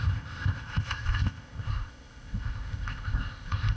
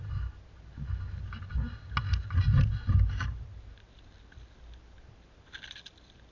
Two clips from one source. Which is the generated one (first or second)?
first